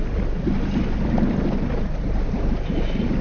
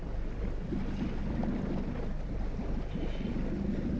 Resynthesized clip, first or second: first